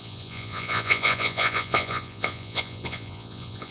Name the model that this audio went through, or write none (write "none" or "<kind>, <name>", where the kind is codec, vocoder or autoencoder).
vocoder, Vocos